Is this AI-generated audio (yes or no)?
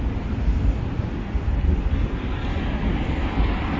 no